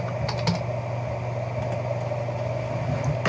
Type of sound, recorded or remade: recorded